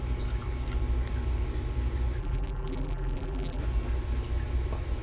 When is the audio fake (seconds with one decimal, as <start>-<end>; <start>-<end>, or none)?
2.2-3.6